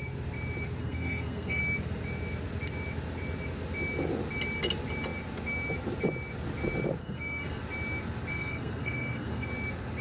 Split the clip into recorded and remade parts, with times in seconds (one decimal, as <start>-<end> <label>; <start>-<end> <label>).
0.0-0.8 recorded; 0.8-1.6 remade; 1.6-7.0 recorded; 7.0-7.6 remade; 7.6-8.3 recorded; 8.3-9.5 remade; 9.5-10.0 recorded